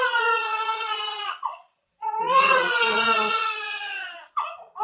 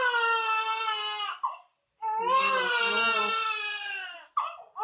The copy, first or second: first